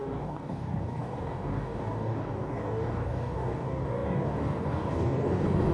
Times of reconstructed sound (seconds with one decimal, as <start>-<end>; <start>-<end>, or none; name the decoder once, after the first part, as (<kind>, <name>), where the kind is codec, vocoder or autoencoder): 0.0-5.7 (codec, DAC)